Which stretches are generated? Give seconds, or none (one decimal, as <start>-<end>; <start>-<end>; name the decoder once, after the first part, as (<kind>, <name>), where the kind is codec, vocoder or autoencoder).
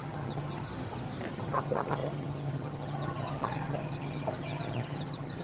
0.0-0.7 (vocoder, HiFi-GAN); 1.3-5.4